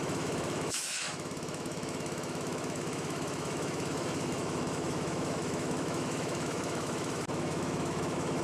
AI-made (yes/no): yes